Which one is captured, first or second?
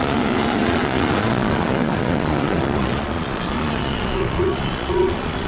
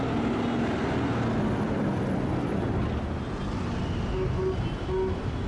second